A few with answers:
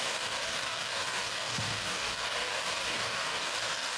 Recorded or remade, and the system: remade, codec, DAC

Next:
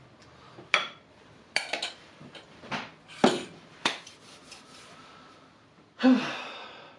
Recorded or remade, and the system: remade, vocoder, BigVGAN v2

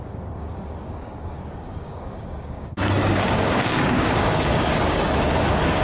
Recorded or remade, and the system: remade, codec, DAC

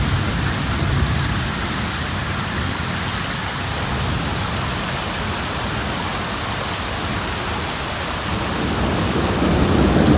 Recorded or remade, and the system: recorded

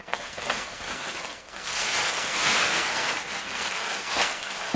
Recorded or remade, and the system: remade, codec, SNAC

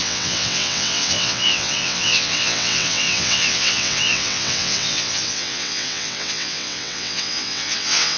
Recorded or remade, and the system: remade, vocoder, WaveNeXt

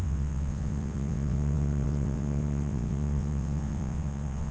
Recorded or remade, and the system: remade, vocoder, WaveNeXt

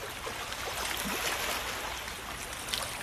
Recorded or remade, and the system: recorded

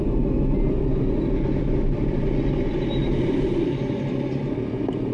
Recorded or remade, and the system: recorded